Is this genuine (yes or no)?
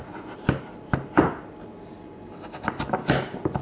yes